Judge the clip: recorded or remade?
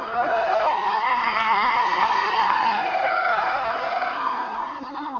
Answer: remade